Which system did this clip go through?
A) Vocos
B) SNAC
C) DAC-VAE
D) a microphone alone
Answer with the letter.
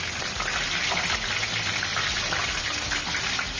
D